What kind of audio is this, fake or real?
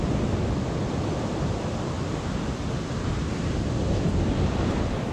real